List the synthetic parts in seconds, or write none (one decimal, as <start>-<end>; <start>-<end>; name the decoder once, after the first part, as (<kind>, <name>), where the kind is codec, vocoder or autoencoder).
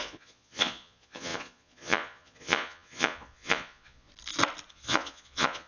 0.0-4.1 (vocoder, Vocos); 4.7-5.7